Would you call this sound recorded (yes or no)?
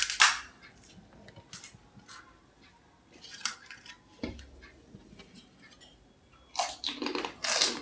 yes